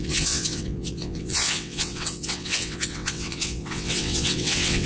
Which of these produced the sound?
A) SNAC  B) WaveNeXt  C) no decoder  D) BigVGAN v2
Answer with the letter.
B